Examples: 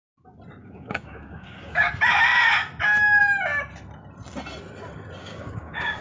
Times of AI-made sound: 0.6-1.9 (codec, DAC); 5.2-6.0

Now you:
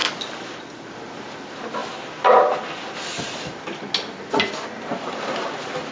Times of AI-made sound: none

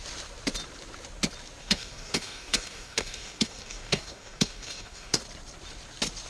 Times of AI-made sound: 1.6-5.2 (codec, DAC)

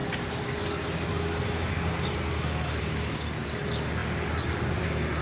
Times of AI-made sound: none

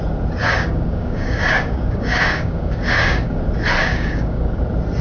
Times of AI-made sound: 0.4-3.4 (codec, DAC); 3.8-4.6

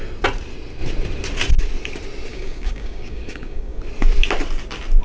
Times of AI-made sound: 2.3-3.8 (codec, DAC)